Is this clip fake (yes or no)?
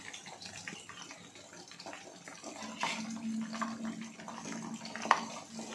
no